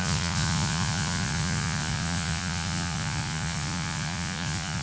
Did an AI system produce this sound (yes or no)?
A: yes